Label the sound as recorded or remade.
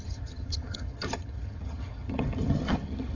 remade